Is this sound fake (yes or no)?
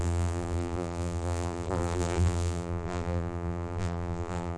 yes